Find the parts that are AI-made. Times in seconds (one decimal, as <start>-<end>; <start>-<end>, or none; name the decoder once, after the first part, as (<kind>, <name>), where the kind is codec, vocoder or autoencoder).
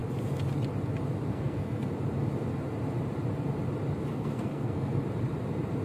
1.3-1.9 (codec, SNAC); 4.1-5.0